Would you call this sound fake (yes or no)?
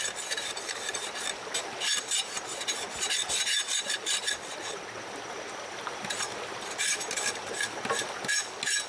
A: no